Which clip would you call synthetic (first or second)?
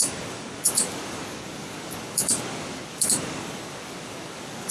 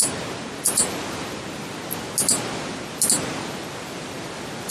first